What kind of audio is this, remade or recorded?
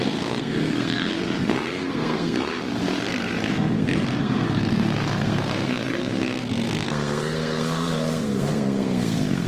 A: remade